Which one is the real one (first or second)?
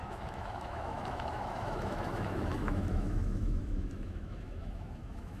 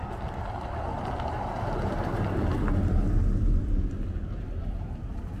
second